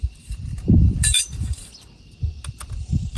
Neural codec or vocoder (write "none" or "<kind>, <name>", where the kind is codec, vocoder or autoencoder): vocoder, BigVGAN v2